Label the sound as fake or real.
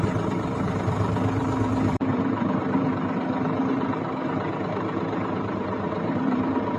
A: fake